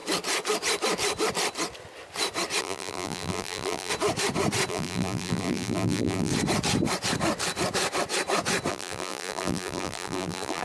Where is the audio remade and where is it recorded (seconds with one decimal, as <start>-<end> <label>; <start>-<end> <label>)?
0.0-2.6 recorded; 2.6-3.9 remade; 3.9-4.7 recorded; 4.7-6.3 remade; 6.3-8.7 recorded; 8.7-10.6 remade